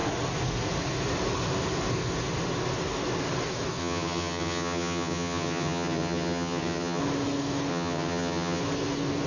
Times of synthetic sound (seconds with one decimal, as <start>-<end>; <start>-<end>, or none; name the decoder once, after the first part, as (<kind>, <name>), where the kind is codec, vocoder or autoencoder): 3.8-7.0 (vocoder, HiFi-GAN); 7.7-8.6